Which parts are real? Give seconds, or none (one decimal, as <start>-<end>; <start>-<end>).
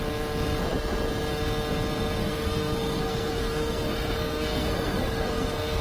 0.0-2.2